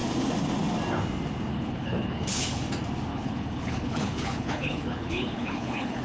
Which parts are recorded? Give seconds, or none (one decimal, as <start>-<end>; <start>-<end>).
0.0-1.5; 2.6-3.1